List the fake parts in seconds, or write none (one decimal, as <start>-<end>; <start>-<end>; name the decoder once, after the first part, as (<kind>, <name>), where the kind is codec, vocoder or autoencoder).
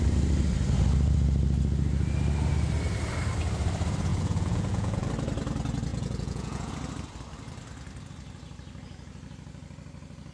4.1-5.1 (vocoder, Vocos); 5.9-6.7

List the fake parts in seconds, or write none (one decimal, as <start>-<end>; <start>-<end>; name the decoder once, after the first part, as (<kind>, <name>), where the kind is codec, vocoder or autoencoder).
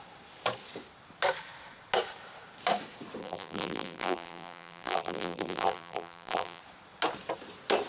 3.2-6.6 (vocoder, BigVGAN v2)